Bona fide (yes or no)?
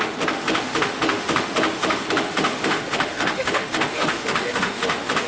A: no